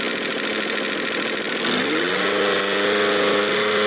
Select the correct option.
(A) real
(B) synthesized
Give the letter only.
A